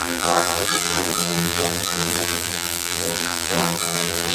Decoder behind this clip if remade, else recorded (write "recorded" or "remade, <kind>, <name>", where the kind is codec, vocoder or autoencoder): remade, vocoder, BigVGAN v2